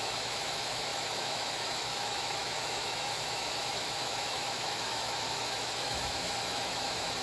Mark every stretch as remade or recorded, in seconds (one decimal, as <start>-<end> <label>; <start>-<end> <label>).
0.0-7.2 remade